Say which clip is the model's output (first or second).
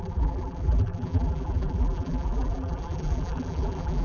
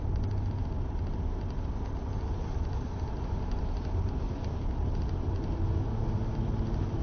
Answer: first